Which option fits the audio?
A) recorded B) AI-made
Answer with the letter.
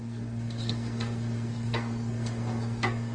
B